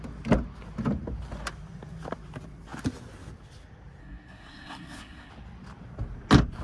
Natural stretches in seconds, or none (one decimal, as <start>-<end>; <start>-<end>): 0.0-4.0; 5.3-6.6